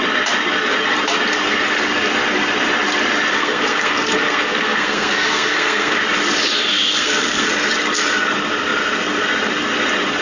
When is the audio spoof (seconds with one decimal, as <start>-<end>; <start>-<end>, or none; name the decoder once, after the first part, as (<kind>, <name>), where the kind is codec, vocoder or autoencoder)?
3.3-6.0 (codec, SNAC); 6.7-7.5